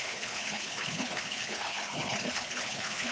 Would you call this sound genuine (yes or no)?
no